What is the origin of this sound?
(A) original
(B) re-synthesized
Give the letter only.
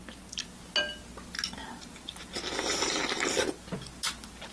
A